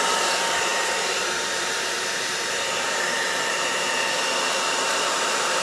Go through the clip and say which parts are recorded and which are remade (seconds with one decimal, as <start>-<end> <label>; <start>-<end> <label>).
0.0-5.6 remade